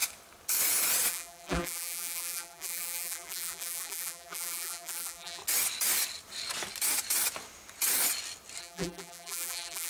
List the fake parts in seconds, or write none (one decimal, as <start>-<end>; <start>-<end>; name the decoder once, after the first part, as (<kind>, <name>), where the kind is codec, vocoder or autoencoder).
1.1-5.4 (vocoder, BigVGAN v2); 8.6-9.9